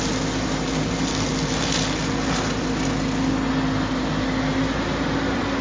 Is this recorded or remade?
recorded